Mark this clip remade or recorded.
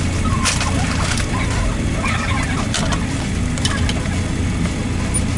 recorded